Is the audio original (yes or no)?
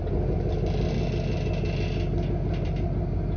yes